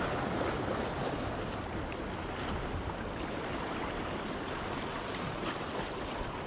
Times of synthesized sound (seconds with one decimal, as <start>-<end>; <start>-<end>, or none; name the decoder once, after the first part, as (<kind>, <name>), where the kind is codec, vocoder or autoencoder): 5.1-5.7 (vocoder, BigVGAN v2)